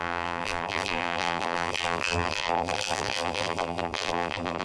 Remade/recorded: remade